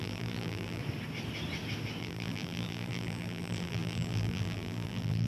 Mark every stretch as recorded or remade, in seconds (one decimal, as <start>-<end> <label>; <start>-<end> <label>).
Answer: 0.0-0.8 remade; 0.8-2.0 recorded; 2.0-5.3 remade